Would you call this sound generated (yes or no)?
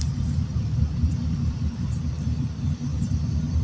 yes